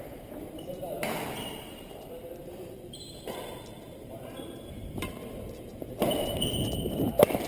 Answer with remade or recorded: remade